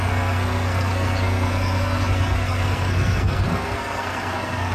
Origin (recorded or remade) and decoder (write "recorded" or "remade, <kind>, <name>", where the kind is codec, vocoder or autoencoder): remade, codec, SNAC